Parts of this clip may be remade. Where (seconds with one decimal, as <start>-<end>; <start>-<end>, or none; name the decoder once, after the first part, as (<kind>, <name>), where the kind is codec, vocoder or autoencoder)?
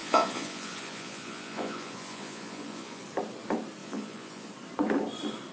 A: 0.0-3.0 (vocoder, Vocos); 3.8-4.5